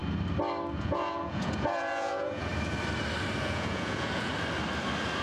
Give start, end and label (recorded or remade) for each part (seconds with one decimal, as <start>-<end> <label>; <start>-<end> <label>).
0.0-0.8 recorded; 0.8-2.5 remade; 2.5-3.4 recorded; 3.4-4.3 remade; 4.3-5.2 recorded